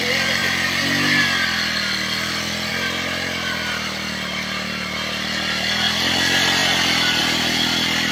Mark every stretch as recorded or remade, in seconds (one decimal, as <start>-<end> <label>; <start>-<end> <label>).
0.0-8.1 recorded